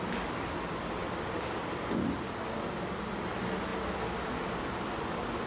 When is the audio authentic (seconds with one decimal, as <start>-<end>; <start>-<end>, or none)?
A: 0.0-5.5